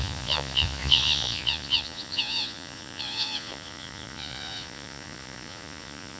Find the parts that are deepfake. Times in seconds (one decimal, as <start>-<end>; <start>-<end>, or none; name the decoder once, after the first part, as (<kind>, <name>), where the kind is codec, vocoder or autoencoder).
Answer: 0.0-6.2 (vocoder, Vocos)